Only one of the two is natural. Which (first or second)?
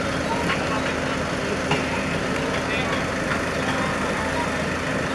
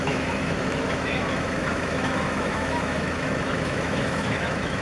first